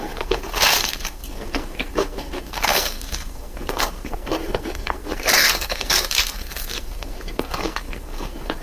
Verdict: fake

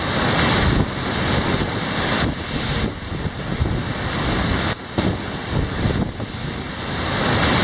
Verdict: real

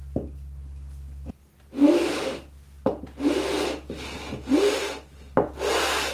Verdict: real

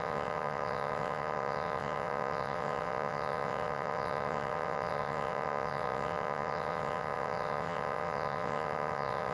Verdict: fake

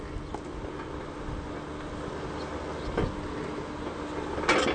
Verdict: real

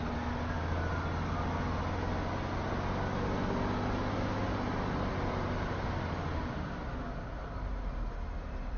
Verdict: real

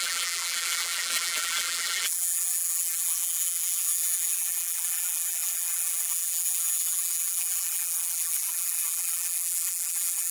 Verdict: fake